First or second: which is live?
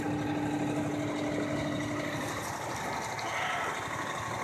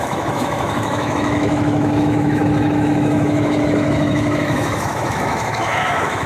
first